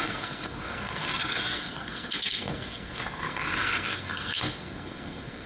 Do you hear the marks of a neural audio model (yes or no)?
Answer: yes